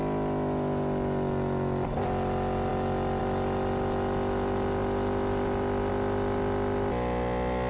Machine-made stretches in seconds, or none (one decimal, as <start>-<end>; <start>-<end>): none